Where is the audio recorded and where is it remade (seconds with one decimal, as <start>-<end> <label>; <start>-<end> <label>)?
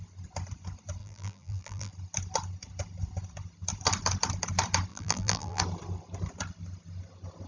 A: 0.0-1.0 recorded; 1.0-1.9 remade; 1.9-4.9 recorded; 4.9-5.6 remade; 5.6-7.5 recorded